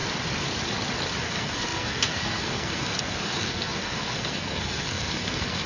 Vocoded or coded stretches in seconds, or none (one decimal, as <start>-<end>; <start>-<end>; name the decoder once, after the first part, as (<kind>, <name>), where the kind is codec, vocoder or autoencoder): 1.2-5.7 (codec, SNAC)